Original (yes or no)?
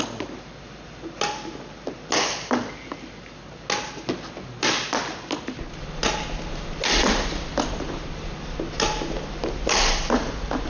yes